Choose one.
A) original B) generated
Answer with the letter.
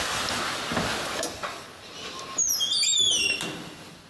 A